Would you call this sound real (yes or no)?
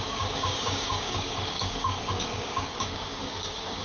no